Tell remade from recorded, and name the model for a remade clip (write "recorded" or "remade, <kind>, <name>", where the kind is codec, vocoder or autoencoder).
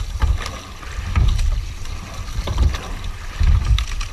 recorded